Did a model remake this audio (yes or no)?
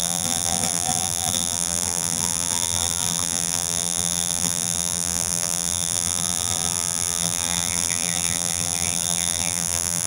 yes